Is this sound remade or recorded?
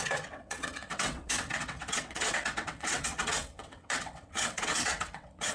remade